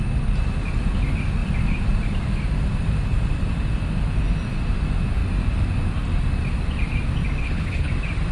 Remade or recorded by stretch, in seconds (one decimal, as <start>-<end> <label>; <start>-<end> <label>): 0.0-7.4 recorded; 7.4-7.9 remade; 7.9-8.3 recorded